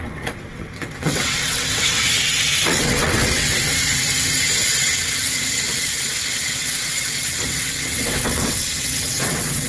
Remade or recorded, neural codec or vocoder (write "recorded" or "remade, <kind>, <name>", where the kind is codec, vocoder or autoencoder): remade, vocoder, WaveNeXt